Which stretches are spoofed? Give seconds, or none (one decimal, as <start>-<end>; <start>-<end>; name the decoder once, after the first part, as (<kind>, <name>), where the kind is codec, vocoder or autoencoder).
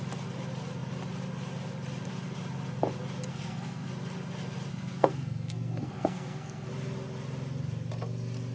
3.3-3.9 (codec, SNAC); 4.7-6.7